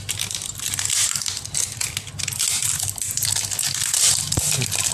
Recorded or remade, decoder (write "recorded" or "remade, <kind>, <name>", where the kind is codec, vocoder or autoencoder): recorded